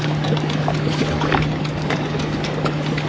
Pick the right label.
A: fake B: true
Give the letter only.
A